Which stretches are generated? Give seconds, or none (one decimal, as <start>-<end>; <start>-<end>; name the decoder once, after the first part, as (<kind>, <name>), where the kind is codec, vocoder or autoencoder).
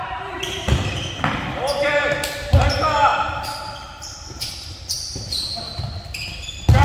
3.1-5.0 (vocoder, BigVGAN v2)